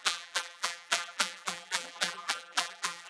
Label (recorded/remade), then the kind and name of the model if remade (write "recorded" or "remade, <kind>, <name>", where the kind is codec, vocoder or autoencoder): remade, vocoder, BigVGAN v2